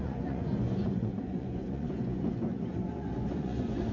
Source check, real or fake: fake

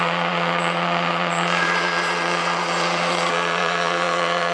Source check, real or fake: fake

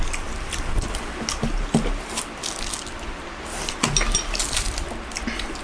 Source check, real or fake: real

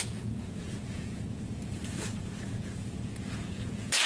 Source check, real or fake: fake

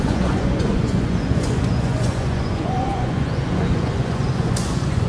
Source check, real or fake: fake